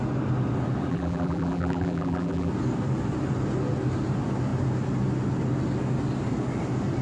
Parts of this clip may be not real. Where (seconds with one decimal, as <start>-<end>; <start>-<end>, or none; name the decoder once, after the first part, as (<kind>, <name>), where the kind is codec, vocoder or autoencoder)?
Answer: 0.9-2.5 (vocoder, BigVGAN v2)